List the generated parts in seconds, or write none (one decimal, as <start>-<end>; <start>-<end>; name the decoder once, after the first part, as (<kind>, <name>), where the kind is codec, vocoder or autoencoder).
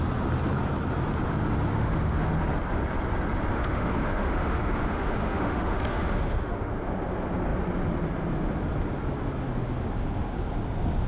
1.7-2.2 (autoencoder, DAC-VAE); 3.5-6.7